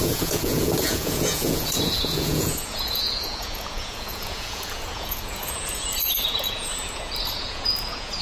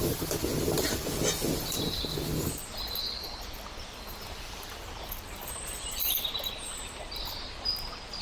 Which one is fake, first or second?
first